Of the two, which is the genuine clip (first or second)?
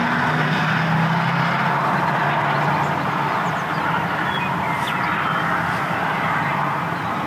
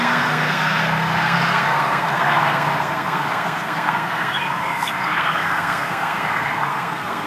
first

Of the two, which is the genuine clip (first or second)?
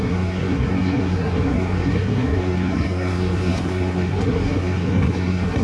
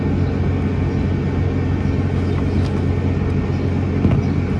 second